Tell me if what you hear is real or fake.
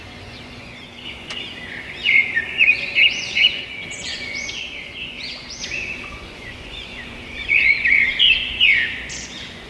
fake